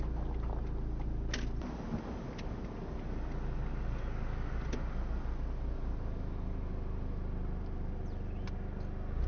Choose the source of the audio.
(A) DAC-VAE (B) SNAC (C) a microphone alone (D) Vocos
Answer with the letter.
C